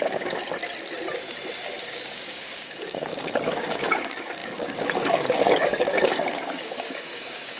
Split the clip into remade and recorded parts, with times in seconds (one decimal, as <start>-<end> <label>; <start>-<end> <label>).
0.0-0.4 remade; 0.4-1.8 recorded; 1.8-7.6 remade